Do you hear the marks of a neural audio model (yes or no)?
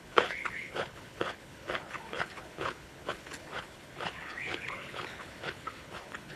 yes